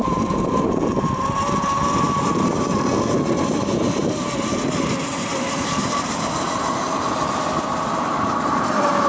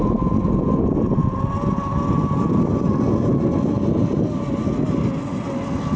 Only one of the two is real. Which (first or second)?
second